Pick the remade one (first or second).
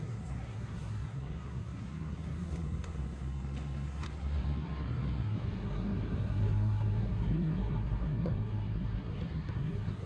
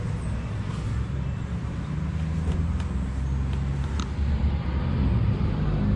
first